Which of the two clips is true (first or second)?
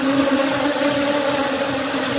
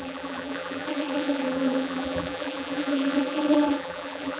first